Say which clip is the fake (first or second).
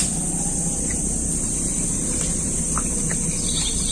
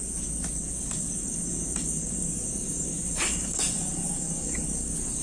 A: second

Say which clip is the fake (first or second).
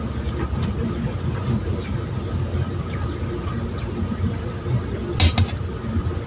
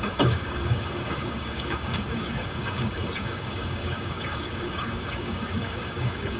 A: second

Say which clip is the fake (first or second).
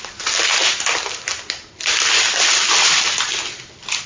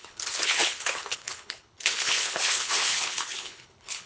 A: second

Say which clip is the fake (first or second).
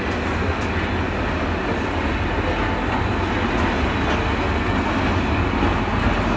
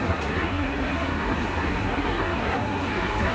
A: second